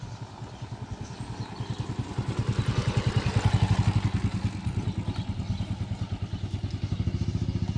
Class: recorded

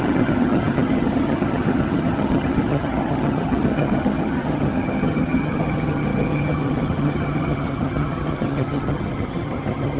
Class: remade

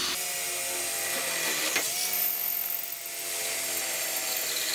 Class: recorded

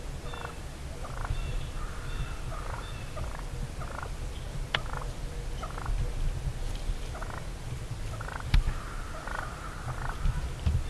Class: recorded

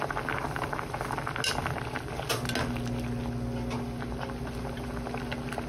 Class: recorded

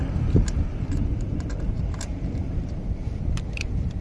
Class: remade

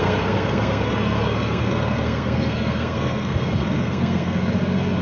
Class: remade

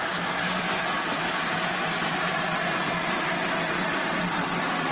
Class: recorded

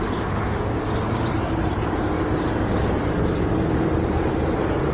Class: remade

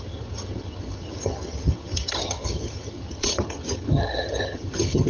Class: remade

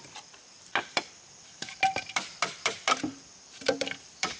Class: remade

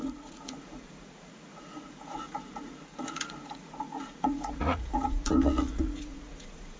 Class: remade